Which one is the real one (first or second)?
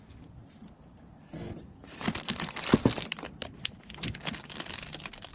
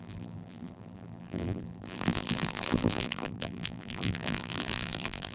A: first